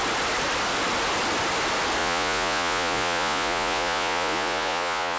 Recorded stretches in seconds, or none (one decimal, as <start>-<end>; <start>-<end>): 0.0-2.0